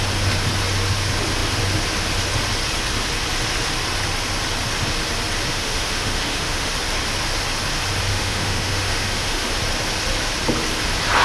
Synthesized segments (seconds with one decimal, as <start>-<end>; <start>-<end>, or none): 5.5-6.7; 8.1-9.5